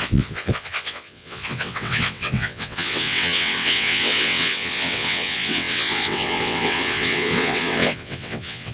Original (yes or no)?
no